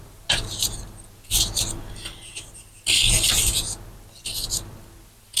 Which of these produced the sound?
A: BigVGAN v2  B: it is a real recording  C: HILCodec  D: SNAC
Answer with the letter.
B